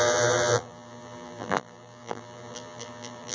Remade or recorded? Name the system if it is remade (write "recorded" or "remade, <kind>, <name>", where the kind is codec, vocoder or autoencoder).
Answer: remade, vocoder, BigVGAN v2